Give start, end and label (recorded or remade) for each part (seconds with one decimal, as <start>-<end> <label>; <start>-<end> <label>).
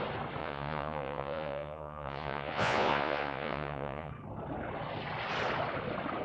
0.0-0.4 recorded; 0.4-4.1 remade; 4.1-6.2 recorded